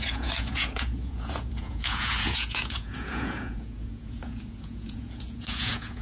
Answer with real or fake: fake